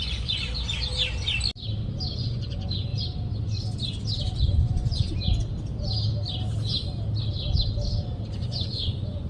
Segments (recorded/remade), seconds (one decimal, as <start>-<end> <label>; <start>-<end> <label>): 0.0-0.4 remade; 0.4-2.1 recorded; 2.1-2.9 remade; 2.9-4.2 recorded; 4.2-5.1 remade; 5.1-8.3 recorded; 8.3-9.3 remade